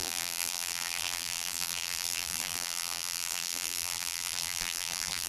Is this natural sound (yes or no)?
no